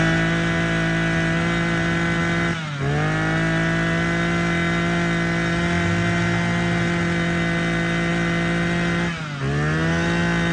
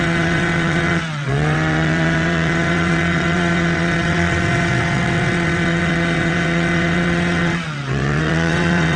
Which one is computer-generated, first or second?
second